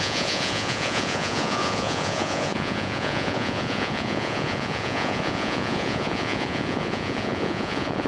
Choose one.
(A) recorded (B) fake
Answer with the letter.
B